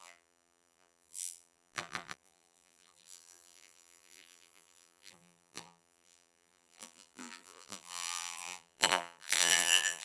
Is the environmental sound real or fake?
fake